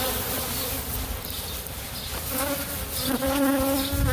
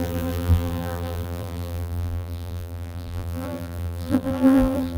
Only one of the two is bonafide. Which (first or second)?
first